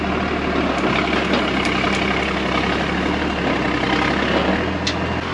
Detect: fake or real real